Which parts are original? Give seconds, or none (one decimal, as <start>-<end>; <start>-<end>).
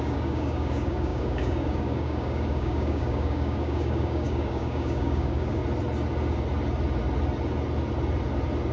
5.6-8.7